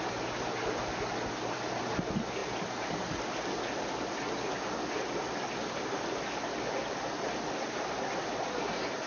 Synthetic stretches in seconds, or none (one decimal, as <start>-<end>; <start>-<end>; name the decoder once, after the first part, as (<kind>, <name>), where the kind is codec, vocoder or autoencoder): none